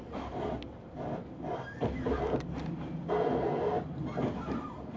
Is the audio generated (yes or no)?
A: no